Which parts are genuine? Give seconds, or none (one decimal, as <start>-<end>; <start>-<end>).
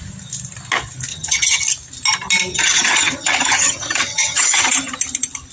0.0-1.1; 1.6-2.5; 4.7-5.5